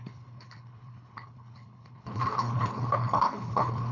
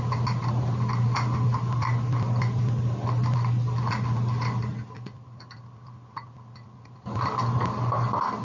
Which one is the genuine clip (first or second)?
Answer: second